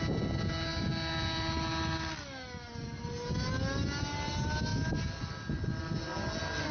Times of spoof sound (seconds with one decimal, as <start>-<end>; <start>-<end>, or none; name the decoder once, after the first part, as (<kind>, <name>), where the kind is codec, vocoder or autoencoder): none